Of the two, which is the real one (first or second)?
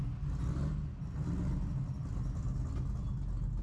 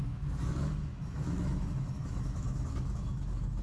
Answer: first